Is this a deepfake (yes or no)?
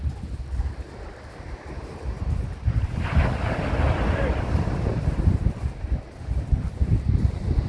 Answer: no